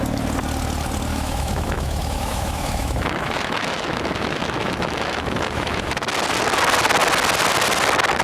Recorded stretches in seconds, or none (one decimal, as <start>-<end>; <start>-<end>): 0.0-1.1; 5.9-8.2